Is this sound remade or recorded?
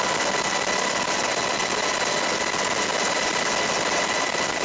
recorded